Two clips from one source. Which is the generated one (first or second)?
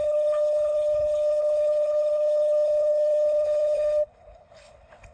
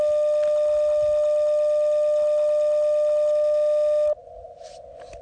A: first